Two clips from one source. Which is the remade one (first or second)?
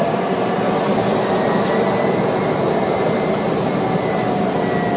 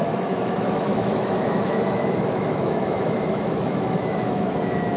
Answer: second